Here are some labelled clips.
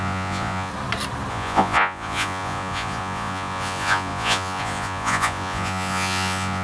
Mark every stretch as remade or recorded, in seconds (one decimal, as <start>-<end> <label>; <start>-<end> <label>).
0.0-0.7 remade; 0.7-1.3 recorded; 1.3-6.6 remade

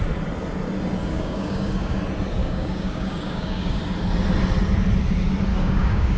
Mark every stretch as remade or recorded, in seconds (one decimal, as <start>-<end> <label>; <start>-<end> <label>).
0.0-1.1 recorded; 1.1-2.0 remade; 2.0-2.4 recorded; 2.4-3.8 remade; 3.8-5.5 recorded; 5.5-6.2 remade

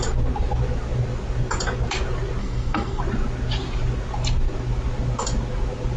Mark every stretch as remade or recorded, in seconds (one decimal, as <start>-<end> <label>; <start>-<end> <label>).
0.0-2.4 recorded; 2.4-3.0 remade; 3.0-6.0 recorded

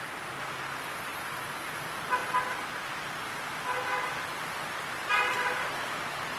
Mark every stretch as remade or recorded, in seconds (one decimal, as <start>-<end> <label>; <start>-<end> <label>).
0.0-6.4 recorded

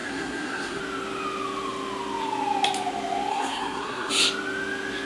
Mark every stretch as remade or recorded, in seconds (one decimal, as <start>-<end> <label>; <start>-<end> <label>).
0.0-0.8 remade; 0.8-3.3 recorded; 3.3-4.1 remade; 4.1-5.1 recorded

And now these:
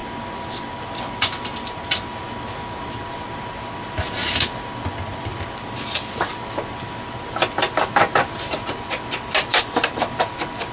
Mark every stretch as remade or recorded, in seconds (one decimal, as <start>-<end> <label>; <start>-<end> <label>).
0.0-5.3 recorded; 5.3-6.3 remade; 6.3-9.5 recorded; 9.5-10.2 remade; 10.2-10.7 recorded

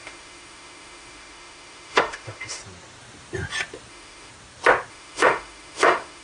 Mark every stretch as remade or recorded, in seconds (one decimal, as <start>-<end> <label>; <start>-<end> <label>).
0.0-2.6 remade; 2.6-3.9 recorded; 3.9-4.3 remade; 4.3-4.9 recorded; 4.9-6.2 remade